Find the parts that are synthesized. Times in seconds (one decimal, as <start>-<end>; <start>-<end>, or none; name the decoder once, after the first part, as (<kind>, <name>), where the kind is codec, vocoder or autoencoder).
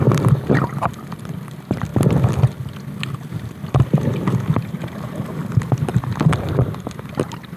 none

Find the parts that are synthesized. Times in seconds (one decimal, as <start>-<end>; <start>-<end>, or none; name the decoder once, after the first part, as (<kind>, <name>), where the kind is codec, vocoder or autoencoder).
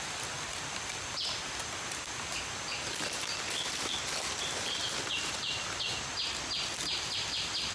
none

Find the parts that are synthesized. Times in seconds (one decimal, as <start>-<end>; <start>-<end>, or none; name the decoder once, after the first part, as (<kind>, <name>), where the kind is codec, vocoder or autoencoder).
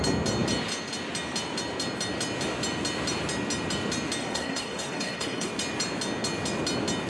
4.2-5.5 (codec, SNAC)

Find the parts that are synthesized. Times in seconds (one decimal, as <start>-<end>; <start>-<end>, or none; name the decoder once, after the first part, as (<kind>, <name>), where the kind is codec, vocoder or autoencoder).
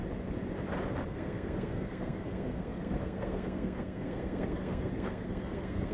1.1-5.9 (codec, SNAC)